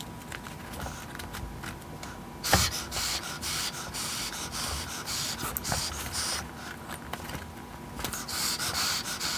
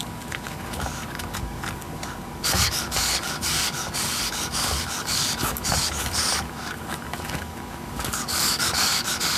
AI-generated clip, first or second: second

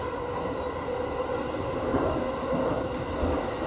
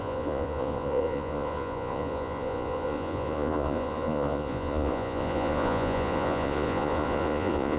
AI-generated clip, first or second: second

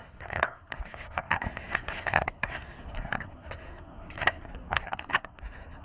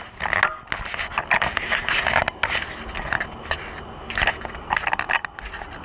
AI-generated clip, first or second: first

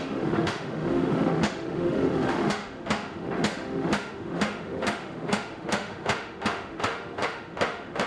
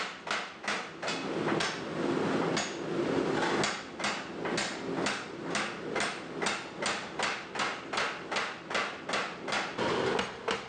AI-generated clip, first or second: first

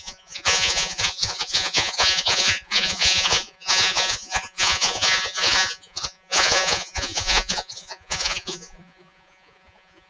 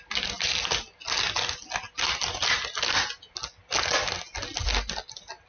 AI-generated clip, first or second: first